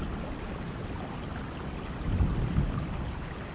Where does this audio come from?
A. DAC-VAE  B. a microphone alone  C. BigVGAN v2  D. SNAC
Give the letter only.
B